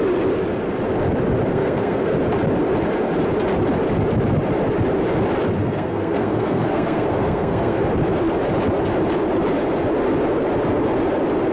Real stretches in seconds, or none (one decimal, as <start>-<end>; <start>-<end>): 0.0-1.5; 2.1-5.6; 7.8-11.5